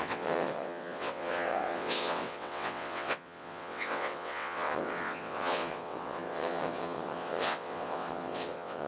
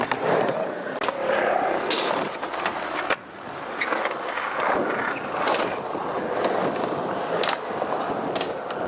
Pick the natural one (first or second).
second